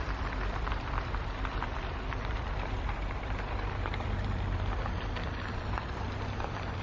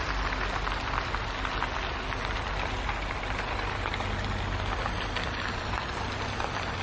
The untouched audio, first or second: second